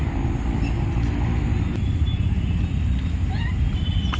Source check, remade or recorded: recorded